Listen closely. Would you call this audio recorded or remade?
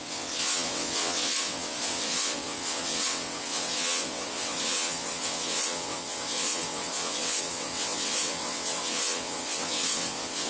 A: remade